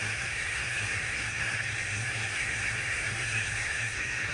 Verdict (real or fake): fake